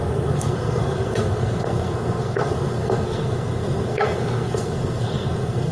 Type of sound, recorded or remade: remade